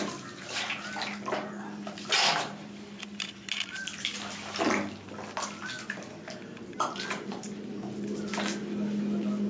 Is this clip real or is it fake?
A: real